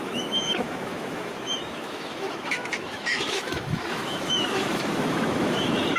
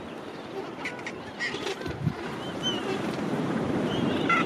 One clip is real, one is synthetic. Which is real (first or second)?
second